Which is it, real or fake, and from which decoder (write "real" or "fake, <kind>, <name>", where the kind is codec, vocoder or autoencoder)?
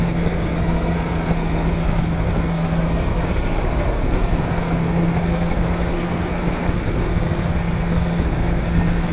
fake, codec, SNAC